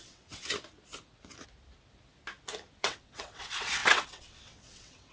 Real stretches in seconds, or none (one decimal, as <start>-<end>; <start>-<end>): 0.4-2.8